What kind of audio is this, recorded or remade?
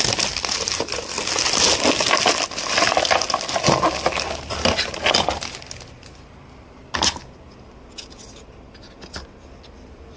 recorded